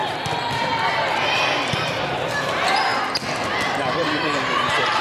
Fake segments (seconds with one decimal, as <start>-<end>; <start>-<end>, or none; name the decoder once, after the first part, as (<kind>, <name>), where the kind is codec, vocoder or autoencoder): 2.1-2.9 (vocoder, BigVGAN v2); 3.8-5.0